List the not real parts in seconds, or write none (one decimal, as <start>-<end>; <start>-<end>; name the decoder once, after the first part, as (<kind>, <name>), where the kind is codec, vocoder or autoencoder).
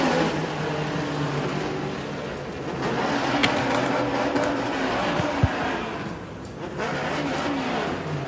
none